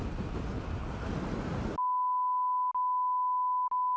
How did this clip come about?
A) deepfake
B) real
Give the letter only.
B